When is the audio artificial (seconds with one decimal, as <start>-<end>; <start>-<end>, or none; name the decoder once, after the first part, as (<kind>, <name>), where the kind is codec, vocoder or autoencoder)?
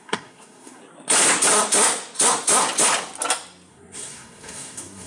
0.0-0.8 (codec, SNAC); 3.7-5.1